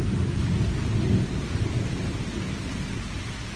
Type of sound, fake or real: real